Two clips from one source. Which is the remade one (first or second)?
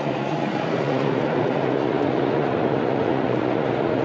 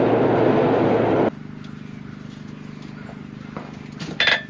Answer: first